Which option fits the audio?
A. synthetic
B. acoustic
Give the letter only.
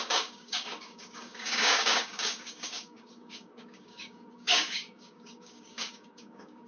A